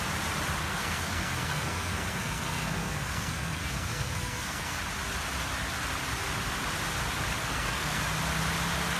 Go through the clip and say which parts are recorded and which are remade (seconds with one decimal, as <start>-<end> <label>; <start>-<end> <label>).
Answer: 0.0-0.7 recorded; 0.7-4.8 remade; 4.8-7.4 recorded; 7.4-8.0 remade; 8.0-9.0 recorded